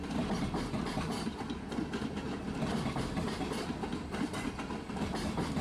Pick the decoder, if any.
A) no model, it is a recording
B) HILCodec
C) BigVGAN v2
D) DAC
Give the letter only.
C